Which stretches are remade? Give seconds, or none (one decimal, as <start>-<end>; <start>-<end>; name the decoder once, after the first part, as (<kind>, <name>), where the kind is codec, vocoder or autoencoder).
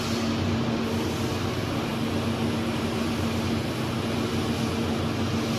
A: none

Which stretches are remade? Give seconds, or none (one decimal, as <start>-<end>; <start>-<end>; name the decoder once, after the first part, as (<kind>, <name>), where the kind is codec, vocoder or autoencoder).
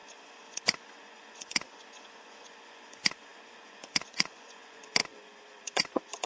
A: 0.0-6.3 (vocoder, Vocos)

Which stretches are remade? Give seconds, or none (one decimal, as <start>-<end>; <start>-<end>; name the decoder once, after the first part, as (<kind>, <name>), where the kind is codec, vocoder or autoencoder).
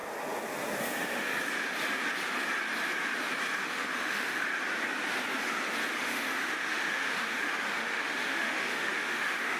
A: 0.8-1.3 (autoencoder, DAC-VAE); 3.6-4.5; 6.0-9.6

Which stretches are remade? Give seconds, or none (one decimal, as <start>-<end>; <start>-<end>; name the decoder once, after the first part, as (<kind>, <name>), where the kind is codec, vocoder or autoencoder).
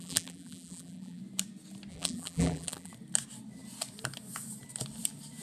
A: 0.0-1.2 (vocoder, BigVGAN v2); 1.9-2.9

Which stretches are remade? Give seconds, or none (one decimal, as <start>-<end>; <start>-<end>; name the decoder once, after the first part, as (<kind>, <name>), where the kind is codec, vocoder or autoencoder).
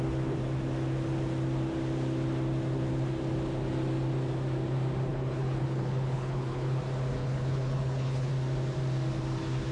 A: 5.1-6.8 (codec, HILCodec); 7.2-8.3